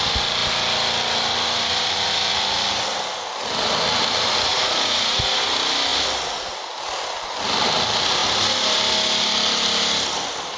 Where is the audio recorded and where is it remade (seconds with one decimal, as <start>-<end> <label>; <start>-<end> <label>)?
0.0-4.5 recorded; 4.5-5.4 remade; 5.4-10.6 recorded